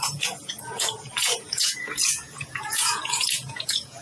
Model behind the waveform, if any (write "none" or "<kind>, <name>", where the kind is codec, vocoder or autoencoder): vocoder, Vocos